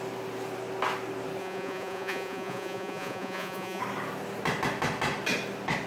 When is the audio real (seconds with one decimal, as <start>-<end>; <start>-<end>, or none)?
0.0-1.4; 3.8-5.9